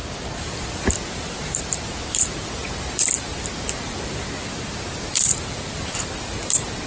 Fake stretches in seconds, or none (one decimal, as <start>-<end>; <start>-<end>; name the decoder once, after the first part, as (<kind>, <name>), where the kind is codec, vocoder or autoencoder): 2.0-2.6 (vocoder, BigVGAN v2); 3.3-6.9